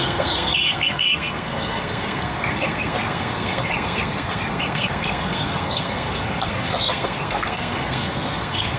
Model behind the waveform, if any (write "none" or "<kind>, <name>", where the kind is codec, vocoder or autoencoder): codec, SNAC